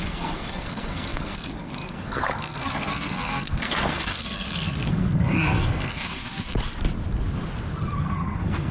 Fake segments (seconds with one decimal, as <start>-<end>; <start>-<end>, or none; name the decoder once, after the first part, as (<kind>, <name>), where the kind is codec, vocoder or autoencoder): 0.0-6.6 (codec, SNAC); 8.0-8.7

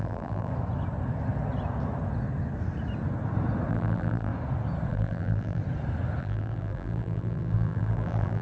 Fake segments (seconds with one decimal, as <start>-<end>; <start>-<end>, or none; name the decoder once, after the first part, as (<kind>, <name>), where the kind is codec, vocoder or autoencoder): 0.0-0.5 (vocoder, BigVGAN v2); 3.7-4.3; 4.9-5.6; 6.2-8.4

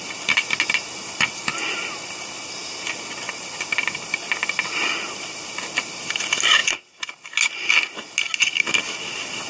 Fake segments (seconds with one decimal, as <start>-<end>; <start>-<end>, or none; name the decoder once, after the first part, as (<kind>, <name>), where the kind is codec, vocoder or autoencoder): none

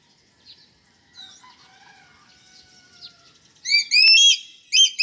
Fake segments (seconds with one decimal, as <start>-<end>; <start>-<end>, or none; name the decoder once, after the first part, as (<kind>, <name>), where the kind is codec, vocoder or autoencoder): none

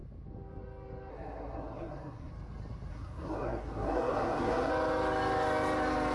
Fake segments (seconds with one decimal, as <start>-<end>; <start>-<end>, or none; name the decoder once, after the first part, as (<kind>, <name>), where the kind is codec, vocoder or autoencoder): 1.1-2.3 (codec, SNAC); 2.9-4.7

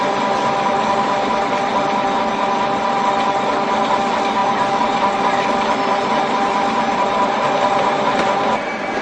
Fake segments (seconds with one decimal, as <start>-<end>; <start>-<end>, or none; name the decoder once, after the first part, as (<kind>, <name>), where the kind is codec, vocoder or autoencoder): 4.4-9.0 (vocoder, BigVGAN v2)

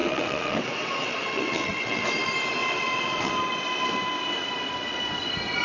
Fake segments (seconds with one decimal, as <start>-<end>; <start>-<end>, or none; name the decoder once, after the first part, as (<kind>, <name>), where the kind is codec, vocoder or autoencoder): 0.0-2.1 (vocoder, WaveNeXt); 2.6-3.3

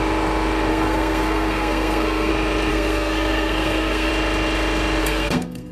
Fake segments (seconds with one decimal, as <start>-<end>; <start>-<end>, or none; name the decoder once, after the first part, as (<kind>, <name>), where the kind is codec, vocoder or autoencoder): 0.7-2.3 (codec, SNAC); 2.7-4.1; 5.0-5.7